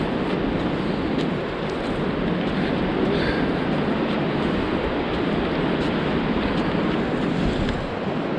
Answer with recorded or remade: recorded